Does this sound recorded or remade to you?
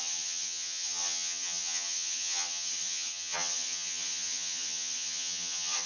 remade